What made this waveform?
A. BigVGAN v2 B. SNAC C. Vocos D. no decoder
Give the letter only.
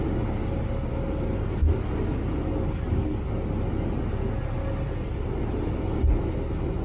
D